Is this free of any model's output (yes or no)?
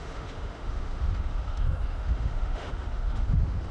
no